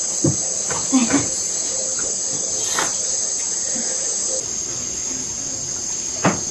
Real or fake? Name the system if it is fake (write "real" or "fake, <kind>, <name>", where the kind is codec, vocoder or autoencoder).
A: real